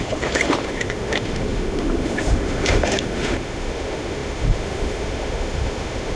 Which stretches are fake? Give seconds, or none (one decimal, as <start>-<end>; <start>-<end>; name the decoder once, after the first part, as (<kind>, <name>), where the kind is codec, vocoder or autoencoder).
0.0-6.2 (autoencoder, DAC-VAE)